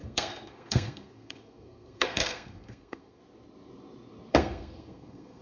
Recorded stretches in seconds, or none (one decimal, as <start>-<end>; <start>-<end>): 3.2-4.3